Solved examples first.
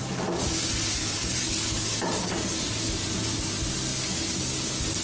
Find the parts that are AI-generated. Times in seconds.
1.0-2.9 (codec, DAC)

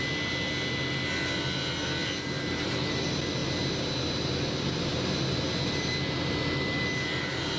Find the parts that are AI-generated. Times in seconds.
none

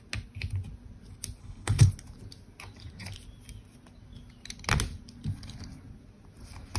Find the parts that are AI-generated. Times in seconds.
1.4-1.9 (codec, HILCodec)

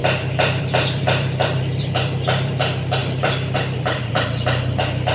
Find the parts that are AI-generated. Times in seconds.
0.0-2.6 (vocoder, BigVGAN v2); 3.0-4.1

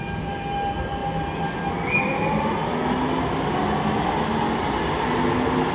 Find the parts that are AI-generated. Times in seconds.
none

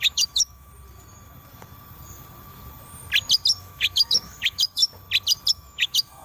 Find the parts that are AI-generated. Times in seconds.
0.0-0.7 (autoencoder, DAC-VAE); 3.6-4.8; 5.5-6.2